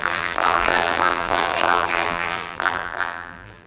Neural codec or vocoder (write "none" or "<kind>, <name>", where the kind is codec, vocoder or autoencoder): vocoder, BigVGAN v2